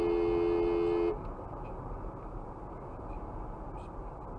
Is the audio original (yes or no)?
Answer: yes